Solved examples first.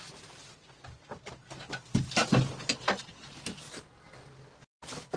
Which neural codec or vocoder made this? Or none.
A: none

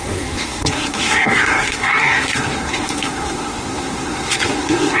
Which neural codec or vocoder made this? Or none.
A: codec, SNAC